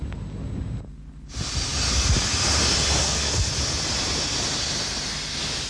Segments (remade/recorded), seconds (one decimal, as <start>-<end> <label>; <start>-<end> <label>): 0.0-3.0 recorded; 3.0-3.5 remade; 3.5-5.7 recorded